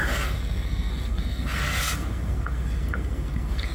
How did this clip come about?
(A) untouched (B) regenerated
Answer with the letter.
B